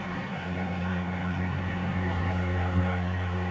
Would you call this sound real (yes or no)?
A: no